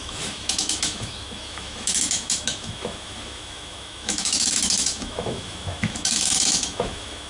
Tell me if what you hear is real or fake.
fake